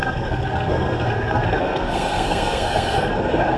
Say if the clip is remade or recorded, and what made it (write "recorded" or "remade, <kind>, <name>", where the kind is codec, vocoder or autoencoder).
remade, codec, SNAC